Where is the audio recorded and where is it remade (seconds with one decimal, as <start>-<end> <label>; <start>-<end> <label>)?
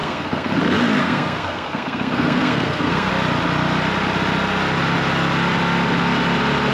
0.0-0.6 remade; 0.6-1.0 recorded; 1.0-3.1 remade; 3.1-6.7 recorded